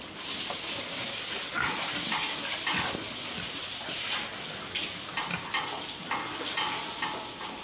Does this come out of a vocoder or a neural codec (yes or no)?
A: no